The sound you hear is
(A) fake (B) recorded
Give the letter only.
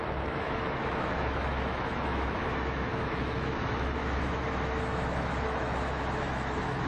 A